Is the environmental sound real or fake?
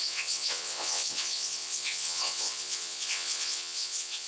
fake